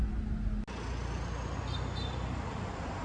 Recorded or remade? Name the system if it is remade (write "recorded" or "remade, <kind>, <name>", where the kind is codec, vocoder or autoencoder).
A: recorded